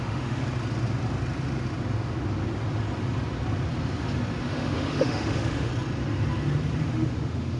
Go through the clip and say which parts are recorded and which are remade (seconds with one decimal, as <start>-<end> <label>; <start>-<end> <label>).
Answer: 0.0-0.4 remade; 0.4-4.4 recorded; 4.4-5.7 remade; 5.7-6.9 recorded; 6.9-7.6 remade